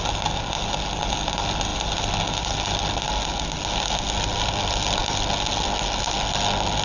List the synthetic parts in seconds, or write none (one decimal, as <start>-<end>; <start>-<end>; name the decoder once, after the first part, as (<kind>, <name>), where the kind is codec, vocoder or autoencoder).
none